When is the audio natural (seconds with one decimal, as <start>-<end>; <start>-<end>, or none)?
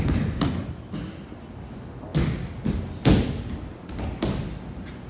0.0-5.1